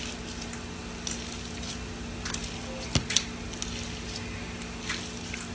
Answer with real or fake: real